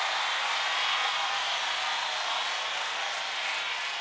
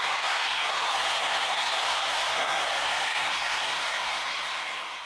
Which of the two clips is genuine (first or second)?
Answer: first